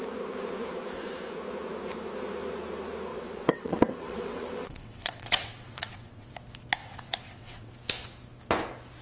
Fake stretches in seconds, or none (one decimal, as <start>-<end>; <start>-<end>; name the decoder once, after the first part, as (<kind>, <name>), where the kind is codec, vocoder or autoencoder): 3.1-6.3 (vocoder, WaveNeXt); 6.8-7.7